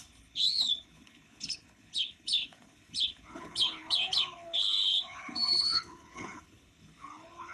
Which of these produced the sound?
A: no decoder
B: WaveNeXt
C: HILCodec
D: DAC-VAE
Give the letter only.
C